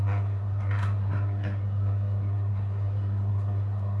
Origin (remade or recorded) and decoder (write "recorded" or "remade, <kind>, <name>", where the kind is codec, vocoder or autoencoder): remade, codec, SNAC